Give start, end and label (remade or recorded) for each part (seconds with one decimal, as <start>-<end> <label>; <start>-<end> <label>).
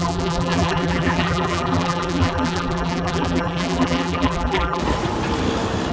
0.0-4.8 remade; 4.8-5.9 recorded